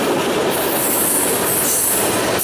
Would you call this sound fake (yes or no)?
no